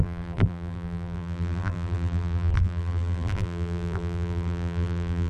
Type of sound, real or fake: fake